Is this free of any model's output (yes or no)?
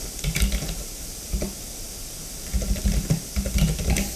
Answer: yes